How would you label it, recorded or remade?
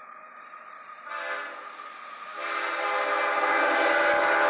recorded